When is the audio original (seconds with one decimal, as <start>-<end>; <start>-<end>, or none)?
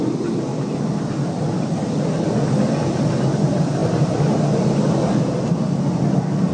0.0-6.5